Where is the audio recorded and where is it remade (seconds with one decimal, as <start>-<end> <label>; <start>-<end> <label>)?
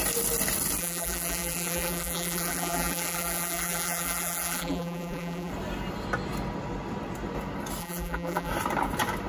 0.0-0.8 recorded; 0.8-5.5 remade; 5.5-7.8 recorded; 7.8-8.5 remade; 8.5-9.3 recorded